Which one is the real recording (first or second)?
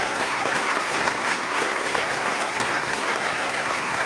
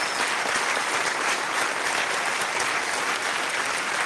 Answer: second